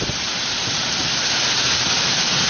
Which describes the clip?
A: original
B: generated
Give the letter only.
A